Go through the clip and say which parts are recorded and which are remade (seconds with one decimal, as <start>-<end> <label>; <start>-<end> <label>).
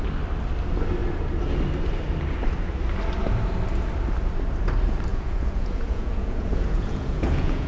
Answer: 0.0-5.1 recorded; 5.1-7.7 remade